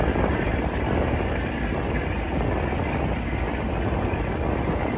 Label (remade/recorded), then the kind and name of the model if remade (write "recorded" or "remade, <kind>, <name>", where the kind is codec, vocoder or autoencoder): recorded